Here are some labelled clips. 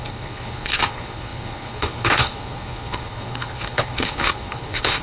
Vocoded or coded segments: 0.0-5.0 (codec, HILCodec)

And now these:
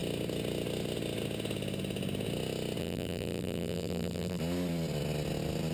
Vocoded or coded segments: 2.8-4.4 (vocoder, BigVGAN v2)

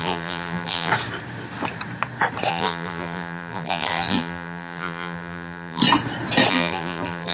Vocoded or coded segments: 0.0-0.9 (vocoder, BigVGAN v2); 2.5-5.8; 6.5-7.3

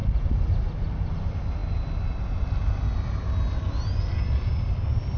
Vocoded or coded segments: none